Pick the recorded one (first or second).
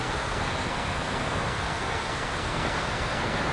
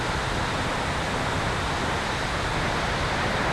second